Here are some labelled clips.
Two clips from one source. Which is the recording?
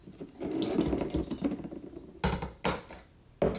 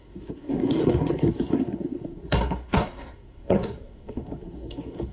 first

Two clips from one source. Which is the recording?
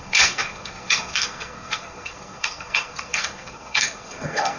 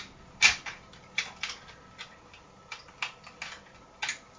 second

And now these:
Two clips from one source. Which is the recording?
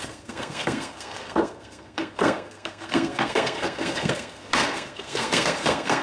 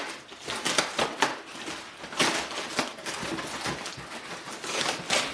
second